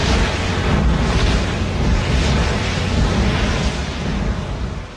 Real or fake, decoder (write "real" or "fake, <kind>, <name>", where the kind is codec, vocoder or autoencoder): real